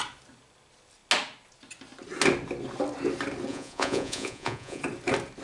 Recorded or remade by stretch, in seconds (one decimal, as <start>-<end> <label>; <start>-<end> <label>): 0.0-3.5 recorded; 3.5-4.8 remade; 4.8-5.4 recorded